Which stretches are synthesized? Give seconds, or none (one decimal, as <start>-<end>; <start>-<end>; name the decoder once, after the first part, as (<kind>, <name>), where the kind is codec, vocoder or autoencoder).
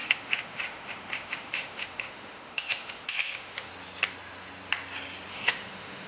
0.0-3.7 (autoencoder, DAC-VAE); 5.3-6.1